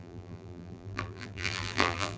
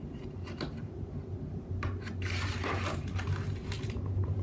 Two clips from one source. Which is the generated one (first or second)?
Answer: first